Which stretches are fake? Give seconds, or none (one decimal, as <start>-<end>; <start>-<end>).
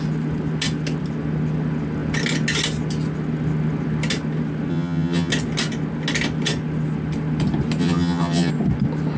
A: 4.7-5.3; 7.8-8.5